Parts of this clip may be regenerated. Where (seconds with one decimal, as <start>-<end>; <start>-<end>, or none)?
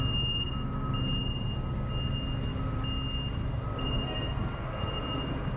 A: none